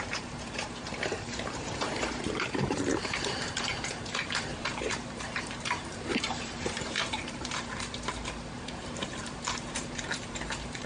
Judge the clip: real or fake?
fake